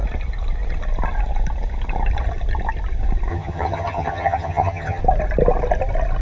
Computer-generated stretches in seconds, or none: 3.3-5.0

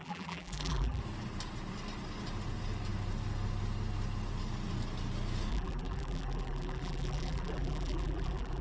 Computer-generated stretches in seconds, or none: 0.0-1.0; 5.5-8.6